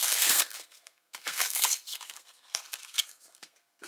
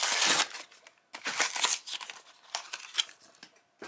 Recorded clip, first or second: second